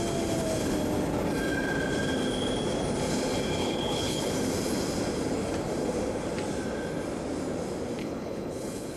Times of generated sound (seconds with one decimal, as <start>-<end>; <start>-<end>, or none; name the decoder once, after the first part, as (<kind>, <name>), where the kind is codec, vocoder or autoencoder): 3.6-4.3 (codec, HILCodec); 8.0-9.0